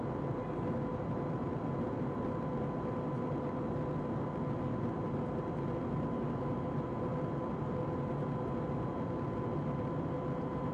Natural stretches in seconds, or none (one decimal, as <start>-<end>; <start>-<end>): 0.0-10.7